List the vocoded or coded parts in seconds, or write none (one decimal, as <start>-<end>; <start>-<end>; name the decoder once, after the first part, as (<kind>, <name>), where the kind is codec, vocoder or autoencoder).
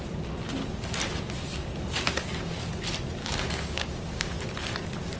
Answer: 3.2-4.3 (codec, DAC)